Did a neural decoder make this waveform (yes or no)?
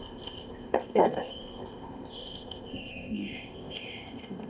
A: yes